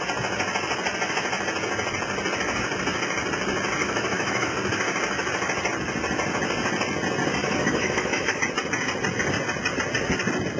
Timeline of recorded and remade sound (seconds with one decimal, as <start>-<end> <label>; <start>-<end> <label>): 0.0-3.8 recorded; 3.8-4.5 remade; 4.5-7.4 recorded; 7.4-8.4 remade; 8.4-10.6 recorded